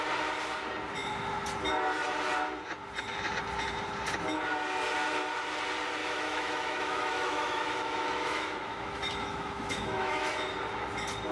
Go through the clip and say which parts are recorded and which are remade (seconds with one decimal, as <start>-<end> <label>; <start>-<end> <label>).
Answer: 0.0-6.0 recorded; 6.0-10.3 remade; 10.3-11.3 recorded

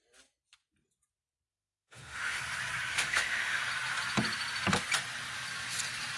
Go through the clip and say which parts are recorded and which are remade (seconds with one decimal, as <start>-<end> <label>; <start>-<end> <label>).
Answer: 0.0-1.5 recorded; 1.5-2.4 remade; 2.4-2.9 recorded; 2.9-3.6 remade; 3.6-6.2 recorded

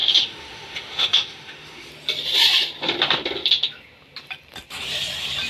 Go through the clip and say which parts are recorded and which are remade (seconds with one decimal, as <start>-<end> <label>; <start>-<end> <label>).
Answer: 0.0-1.9 remade; 1.9-5.5 recorded

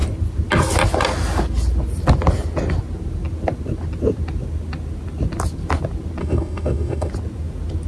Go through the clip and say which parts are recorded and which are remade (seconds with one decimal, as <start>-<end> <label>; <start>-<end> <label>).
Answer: 0.0-6.2 recorded; 6.2-7.1 remade; 7.1-7.9 recorded

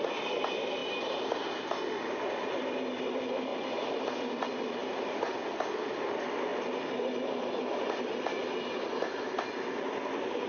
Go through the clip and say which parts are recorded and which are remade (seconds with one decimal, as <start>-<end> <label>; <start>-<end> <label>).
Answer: 0.0-10.5 recorded

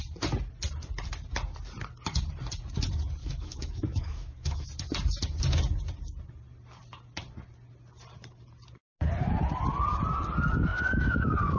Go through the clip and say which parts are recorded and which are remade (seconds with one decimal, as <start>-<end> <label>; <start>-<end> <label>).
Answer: 0.0-3.2 recorded; 3.2-4.7 remade; 4.7-10.7 recorded; 10.7-11.6 remade

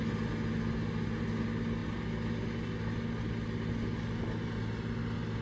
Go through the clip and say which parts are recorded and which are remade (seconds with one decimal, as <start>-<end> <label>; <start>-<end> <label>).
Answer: 0.0-5.4 recorded